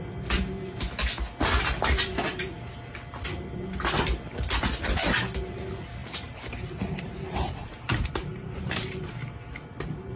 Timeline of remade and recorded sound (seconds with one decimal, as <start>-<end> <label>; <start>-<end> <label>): 0.0-6.0 recorded; 6.0-9.0 remade; 9.0-10.2 recorded